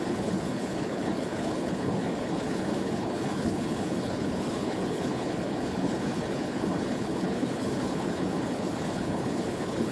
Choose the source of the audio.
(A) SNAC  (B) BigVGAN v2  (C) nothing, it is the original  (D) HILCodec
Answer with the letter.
D